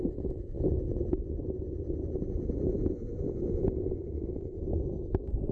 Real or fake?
real